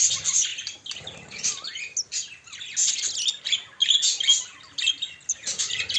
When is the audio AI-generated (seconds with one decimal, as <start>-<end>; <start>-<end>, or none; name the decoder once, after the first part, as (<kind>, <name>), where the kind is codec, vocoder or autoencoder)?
none